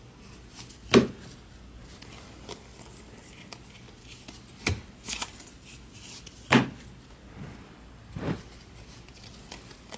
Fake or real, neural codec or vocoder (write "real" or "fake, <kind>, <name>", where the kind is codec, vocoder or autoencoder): real